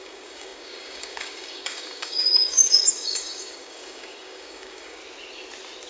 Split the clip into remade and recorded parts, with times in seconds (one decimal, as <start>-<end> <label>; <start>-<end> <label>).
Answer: 0.0-5.0 remade; 5.0-5.9 recorded